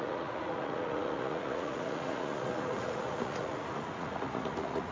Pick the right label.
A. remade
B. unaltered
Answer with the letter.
A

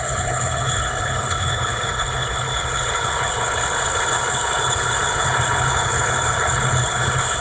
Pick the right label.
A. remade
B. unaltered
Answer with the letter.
A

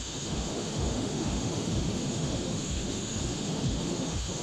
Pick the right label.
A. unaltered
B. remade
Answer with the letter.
B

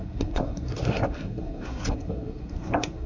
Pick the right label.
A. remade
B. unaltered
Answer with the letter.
A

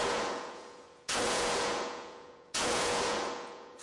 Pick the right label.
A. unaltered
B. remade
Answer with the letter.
B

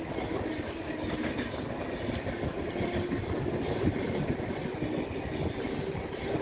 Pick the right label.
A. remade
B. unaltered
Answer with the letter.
B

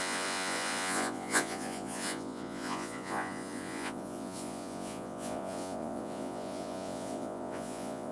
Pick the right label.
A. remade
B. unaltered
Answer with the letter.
A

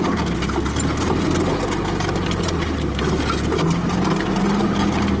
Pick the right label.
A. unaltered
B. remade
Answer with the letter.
A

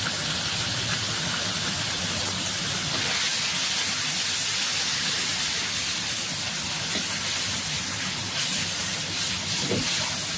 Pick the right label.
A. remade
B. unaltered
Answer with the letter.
B